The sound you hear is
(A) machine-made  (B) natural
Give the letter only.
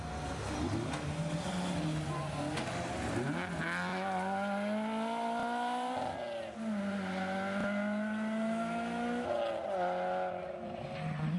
B